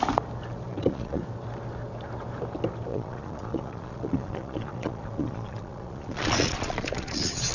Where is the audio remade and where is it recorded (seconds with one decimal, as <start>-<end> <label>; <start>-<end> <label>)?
0.0-0.7 recorded; 0.7-1.2 remade; 1.2-2.9 recorded; 2.9-7.5 remade